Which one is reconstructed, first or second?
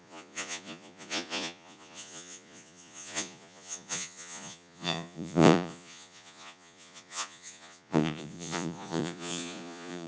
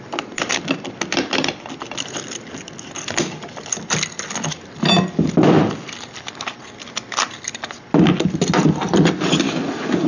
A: first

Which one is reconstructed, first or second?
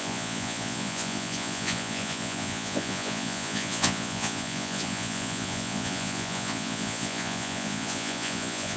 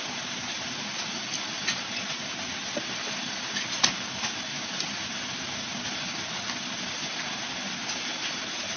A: first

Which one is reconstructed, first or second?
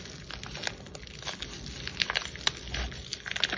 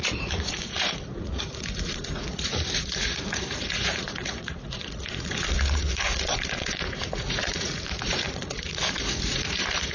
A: second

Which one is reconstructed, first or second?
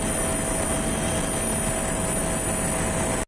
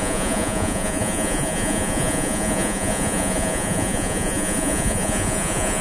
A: second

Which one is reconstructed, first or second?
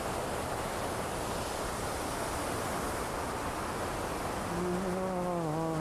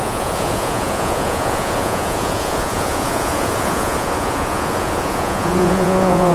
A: second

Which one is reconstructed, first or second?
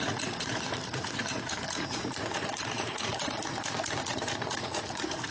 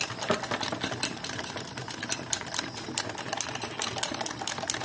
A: first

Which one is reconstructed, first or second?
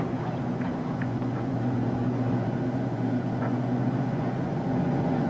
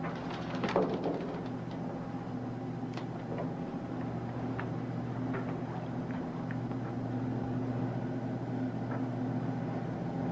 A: first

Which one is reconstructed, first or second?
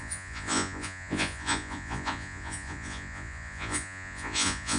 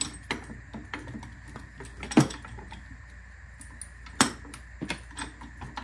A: first